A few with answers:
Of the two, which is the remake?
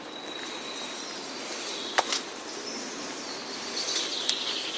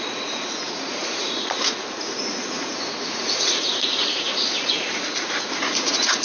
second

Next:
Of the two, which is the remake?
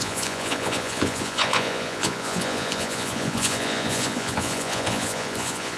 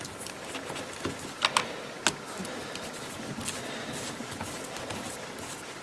first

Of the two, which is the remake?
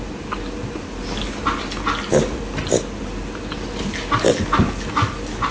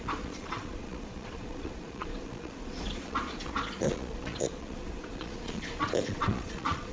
second